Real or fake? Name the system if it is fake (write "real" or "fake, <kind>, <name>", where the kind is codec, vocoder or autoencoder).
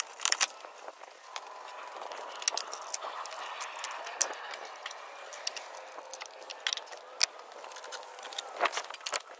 real